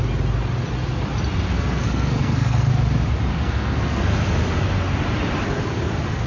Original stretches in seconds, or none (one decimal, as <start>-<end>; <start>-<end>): 0.0-1.5; 2.7-3.3; 4.0-6.3